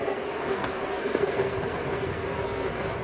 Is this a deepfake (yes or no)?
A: yes